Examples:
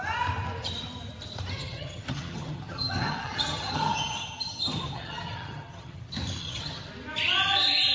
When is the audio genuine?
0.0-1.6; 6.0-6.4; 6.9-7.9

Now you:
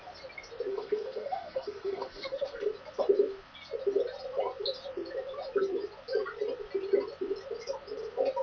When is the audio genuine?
0.0-0.7; 2.7-8.4

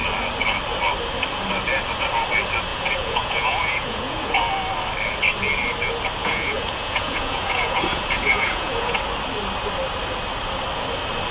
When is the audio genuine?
0.0-2.7; 4.4-6.2; 9.0-11.3

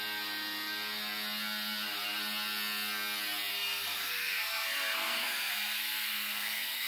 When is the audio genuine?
0.0-3.5

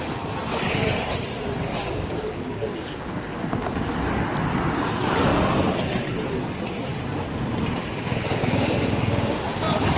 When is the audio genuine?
0.0-1.7; 3.2-8.4; 9.4-10.0

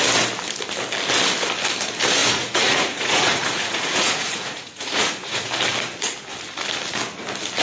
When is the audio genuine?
0.0-2.2; 5.5-7.6

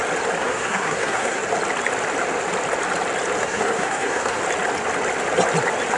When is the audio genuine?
0.0-0.4; 1.4-3.4; 4.4-6.0